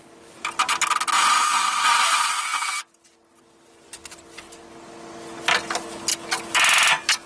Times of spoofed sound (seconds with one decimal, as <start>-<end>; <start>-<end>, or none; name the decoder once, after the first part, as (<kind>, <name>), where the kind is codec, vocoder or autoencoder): none